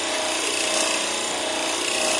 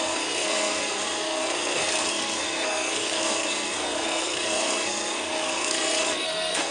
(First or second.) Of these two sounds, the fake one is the second